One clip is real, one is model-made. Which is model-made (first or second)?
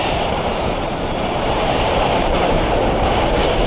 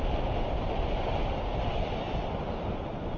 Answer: first